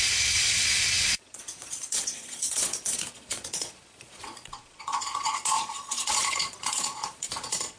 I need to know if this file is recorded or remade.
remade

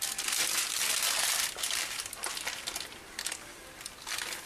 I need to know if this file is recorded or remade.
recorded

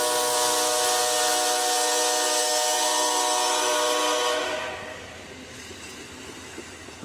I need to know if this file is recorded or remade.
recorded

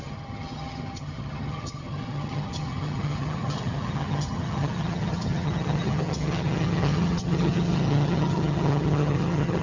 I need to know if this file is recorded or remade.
remade